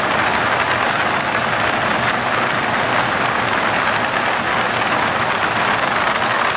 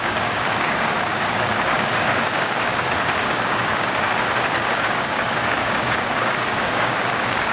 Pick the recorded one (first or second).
first